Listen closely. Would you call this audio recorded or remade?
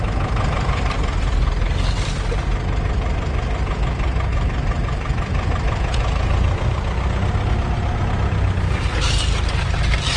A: recorded